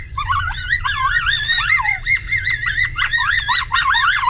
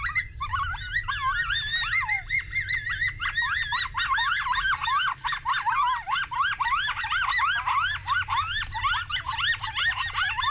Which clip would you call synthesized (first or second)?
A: first